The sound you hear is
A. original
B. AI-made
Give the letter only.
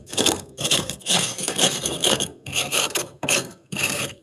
B